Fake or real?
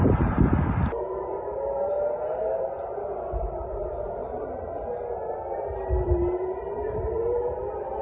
fake